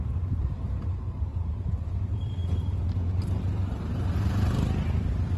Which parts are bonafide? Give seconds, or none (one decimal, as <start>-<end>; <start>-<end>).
2.4-3.5